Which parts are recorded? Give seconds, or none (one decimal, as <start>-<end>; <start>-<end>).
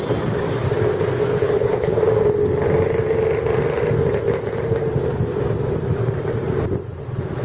0.0-1.3; 2.0-7.4